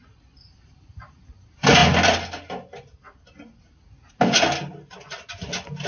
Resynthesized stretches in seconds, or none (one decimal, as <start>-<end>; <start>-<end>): none